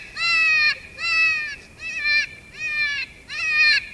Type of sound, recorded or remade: recorded